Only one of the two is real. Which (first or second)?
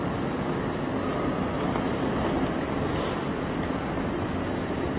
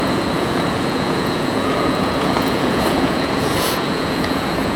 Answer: first